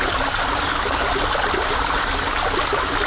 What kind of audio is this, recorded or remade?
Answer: recorded